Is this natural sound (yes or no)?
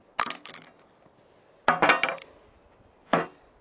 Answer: yes